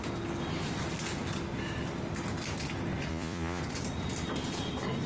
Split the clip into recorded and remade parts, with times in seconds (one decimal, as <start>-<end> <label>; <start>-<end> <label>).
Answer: 0.0-3.1 recorded; 3.1-3.6 remade; 3.6-5.1 recorded